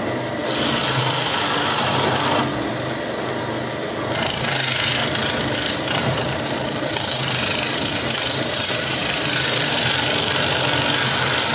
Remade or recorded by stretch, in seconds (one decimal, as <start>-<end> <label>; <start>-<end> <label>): 0.0-2.5 recorded; 2.5-3.9 remade; 3.9-5.0 recorded; 5.0-9.8 remade; 9.8-11.5 recorded